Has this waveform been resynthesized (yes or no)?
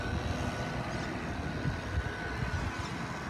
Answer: no